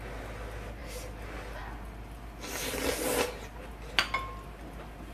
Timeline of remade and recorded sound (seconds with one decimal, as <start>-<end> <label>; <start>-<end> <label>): 0.0-5.1 recorded